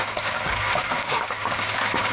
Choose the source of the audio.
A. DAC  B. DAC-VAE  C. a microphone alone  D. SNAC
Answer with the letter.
A